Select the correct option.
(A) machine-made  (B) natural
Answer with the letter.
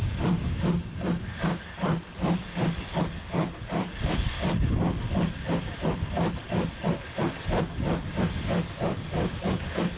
B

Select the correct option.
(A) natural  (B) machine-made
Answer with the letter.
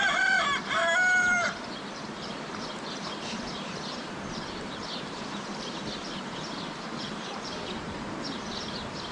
B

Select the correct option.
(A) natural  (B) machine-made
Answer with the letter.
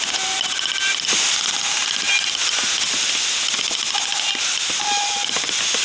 A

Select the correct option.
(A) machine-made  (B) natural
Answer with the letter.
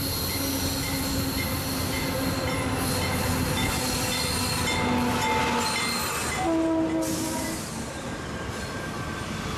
B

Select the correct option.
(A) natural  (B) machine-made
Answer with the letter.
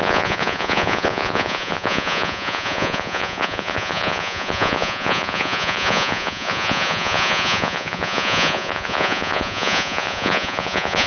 B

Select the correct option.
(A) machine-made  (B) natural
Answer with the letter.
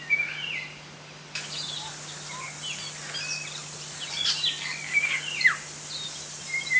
B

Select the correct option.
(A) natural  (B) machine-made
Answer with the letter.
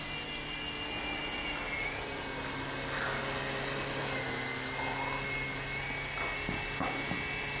A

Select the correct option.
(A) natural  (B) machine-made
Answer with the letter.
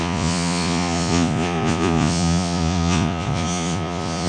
B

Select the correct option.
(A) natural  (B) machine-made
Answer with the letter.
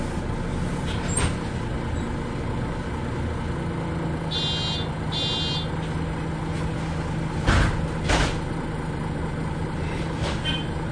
A